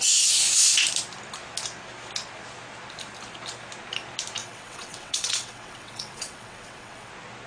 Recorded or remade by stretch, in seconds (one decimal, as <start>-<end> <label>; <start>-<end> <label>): 0.0-4.4 recorded; 4.4-7.1 remade; 7.1-7.5 recorded